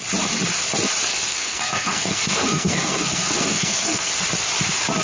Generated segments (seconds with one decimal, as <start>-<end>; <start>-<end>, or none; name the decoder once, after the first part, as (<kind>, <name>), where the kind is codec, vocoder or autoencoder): 1.1-4.1 (codec, SNAC)